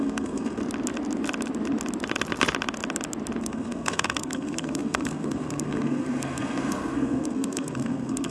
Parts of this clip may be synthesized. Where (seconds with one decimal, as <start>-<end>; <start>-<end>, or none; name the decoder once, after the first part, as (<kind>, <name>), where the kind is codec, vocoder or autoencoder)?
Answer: 0.0-0.6 (codec, SNAC); 3.4-8.3